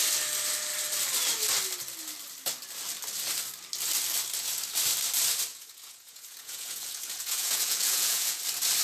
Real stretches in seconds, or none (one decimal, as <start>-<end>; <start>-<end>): 0.0-5.5; 8.4-8.8